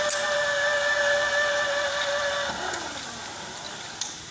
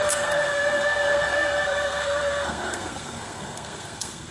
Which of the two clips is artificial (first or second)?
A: second